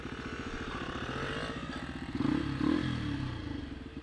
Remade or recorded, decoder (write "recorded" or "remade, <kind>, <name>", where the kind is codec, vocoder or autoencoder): recorded